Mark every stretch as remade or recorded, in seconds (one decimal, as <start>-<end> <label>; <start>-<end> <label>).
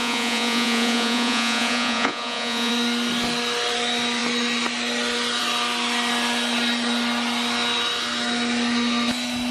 0.0-2.7 remade; 2.7-9.5 recorded